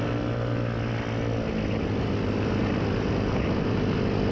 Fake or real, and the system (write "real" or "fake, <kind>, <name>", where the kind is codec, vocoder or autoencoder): real